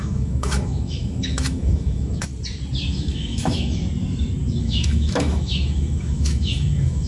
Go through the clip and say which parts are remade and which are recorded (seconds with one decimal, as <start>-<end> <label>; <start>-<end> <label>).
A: 0.0-2.3 remade; 2.3-2.9 recorded; 2.9-3.8 remade; 3.8-4.6 recorded; 4.6-7.1 remade